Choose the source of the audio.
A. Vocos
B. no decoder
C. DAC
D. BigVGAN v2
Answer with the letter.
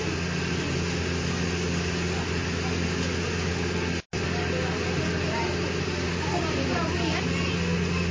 B